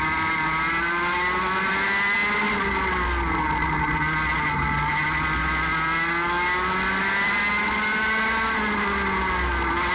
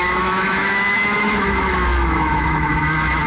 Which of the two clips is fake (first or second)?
second